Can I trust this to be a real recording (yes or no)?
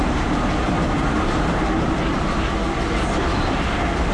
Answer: yes